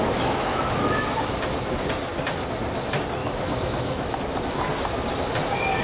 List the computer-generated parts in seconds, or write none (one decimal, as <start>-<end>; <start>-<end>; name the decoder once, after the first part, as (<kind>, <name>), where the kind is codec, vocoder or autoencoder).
0.5-1.2 (autoencoder, DAC-VAE); 3.2-4.2